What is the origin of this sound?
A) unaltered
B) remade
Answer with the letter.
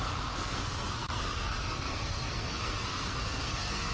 B